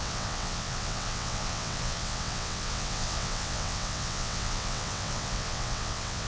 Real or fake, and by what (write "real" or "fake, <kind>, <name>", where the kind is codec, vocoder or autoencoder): fake, vocoder, WaveNeXt